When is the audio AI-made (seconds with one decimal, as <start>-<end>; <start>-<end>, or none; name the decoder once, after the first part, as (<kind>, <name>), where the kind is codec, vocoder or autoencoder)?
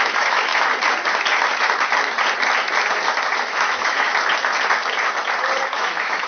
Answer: 0.0-0.5 (autoencoder, DAC-VAE); 3.4-4.1; 5.6-6.3